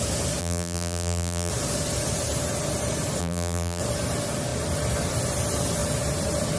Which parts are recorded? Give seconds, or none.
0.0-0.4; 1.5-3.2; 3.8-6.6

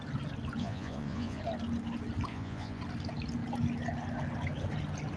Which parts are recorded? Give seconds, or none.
0.0-0.6; 1.4-2.3; 2.8-5.2

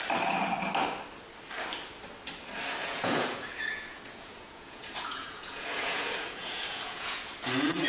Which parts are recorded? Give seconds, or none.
0.0-2.8; 7.3-7.9

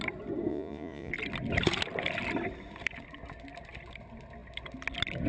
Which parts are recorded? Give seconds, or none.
0.0-0.5; 1.1-5.3

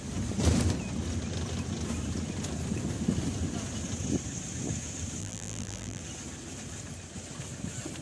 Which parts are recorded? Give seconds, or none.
0.0-5.2; 6.0-8.0

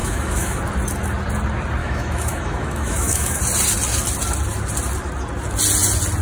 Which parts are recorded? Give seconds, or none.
0.6-1.8; 3.4-6.2